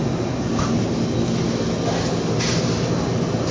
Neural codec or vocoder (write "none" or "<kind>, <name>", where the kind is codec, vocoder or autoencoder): none